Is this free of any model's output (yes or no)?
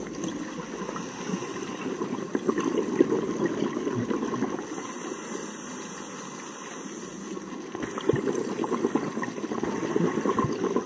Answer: yes